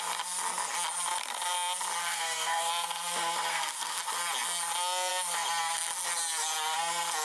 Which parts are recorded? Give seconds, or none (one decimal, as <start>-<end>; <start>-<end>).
0.0-2.0; 2.7-3.5; 4.0-7.2